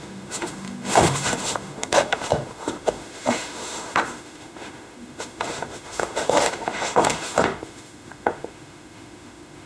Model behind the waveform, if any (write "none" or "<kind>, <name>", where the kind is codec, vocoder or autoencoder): autoencoder, DAC-VAE